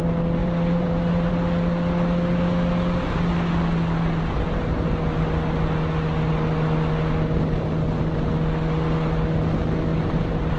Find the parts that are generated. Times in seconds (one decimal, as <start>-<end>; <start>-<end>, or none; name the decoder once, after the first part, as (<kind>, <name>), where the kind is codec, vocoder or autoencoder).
0.4-1.3 (vocoder, BigVGAN v2); 9.9-10.6